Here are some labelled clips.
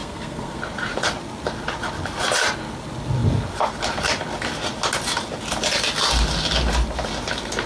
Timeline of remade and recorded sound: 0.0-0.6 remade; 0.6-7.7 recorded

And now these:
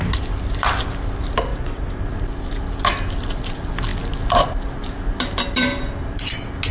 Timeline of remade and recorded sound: 0.0-1.5 recorded; 1.5-2.0 remade; 2.0-6.7 recorded

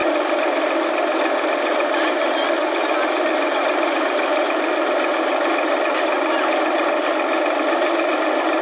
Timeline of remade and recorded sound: 0.0-8.6 recorded

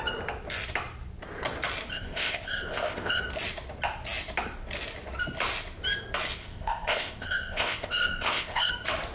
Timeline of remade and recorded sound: 0.0-1.9 recorded; 1.9-3.2 remade; 3.2-6.4 recorded; 6.4-8.7 remade; 8.7-9.1 recorded

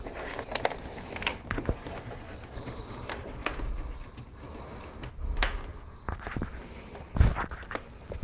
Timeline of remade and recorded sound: 0.0-8.2 recorded

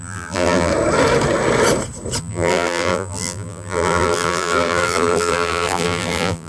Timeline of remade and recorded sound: 0.0-0.7 remade; 0.7-2.2 recorded; 2.2-6.5 remade

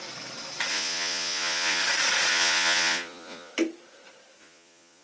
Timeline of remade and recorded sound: 0.0-0.7 recorded; 0.7-1.8 remade; 1.8-2.3 recorded; 2.3-3.5 remade; 3.5-4.4 recorded; 4.4-5.0 remade

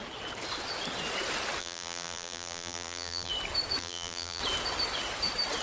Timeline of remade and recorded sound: 0.0-1.6 recorded; 1.6-3.3 remade; 3.3-3.8 recorded; 3.8-4.4 remade; 4.4-5.6 recorded